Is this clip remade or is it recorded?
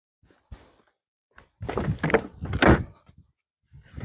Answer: recorded